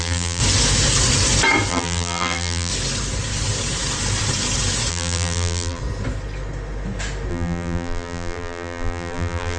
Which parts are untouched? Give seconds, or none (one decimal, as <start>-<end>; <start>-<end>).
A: 0.4-1.7; 2.7-4.9; 5.8-7.3